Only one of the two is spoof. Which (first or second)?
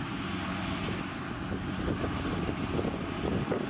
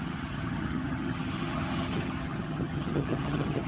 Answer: second